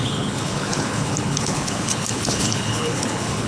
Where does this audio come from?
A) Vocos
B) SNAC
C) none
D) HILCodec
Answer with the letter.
D